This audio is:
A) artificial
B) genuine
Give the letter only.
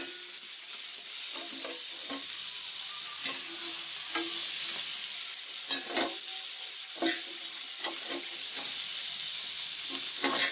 B